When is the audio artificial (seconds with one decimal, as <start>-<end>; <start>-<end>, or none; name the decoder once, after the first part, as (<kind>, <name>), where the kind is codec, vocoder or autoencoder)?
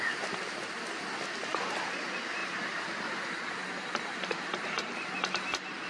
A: 2.4-5.4 (vocoder, BigVGAN v2)